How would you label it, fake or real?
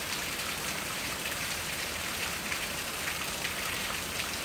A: fake